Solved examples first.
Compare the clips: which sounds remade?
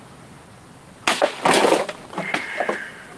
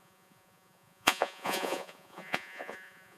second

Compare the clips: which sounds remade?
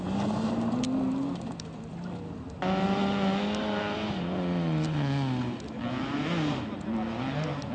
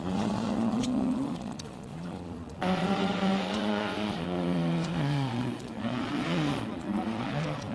second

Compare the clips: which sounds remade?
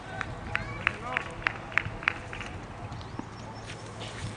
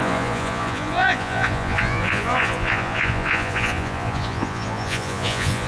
second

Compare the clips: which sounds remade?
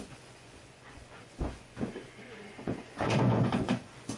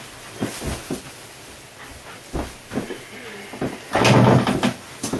first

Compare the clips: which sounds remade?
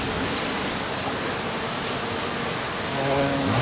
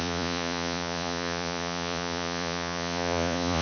second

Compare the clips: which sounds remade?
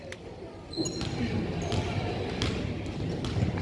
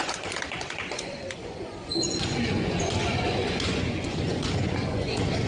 second